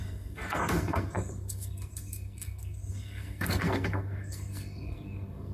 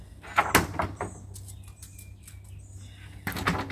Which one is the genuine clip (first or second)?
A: second